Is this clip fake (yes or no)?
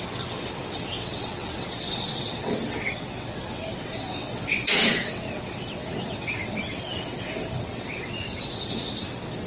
yes